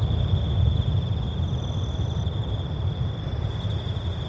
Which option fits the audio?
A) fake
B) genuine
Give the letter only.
B